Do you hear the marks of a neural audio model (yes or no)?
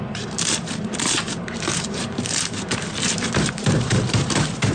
yes